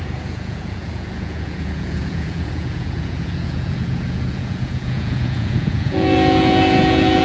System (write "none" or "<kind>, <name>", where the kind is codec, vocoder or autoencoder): vocoder, Vocos